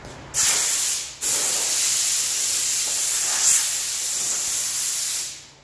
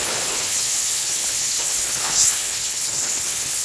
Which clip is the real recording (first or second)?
first